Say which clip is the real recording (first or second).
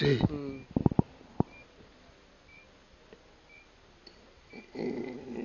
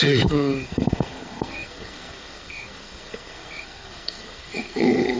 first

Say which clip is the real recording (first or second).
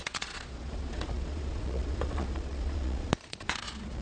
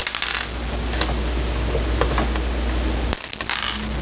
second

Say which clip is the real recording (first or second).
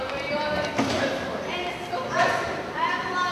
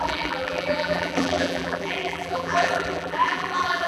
first